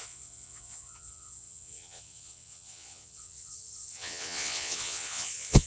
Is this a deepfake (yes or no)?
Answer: yes